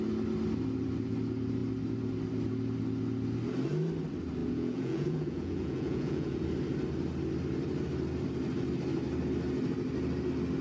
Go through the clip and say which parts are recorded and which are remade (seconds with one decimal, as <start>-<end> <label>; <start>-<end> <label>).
0.0-4.4 recorded; 4.4-6.4 remade; 6.4-10.6 recorded